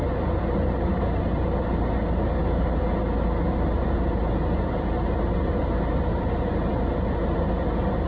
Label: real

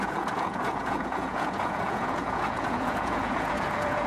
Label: fake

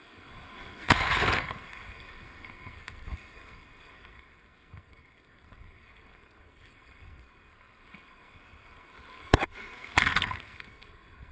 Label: fake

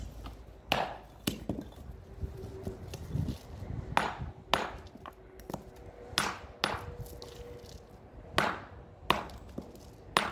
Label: real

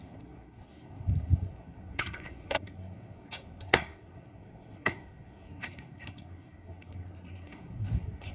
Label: fake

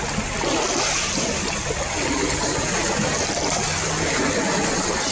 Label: real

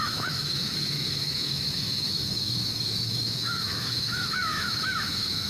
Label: fake